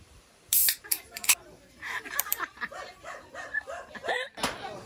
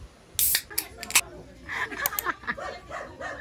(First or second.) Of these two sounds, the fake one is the first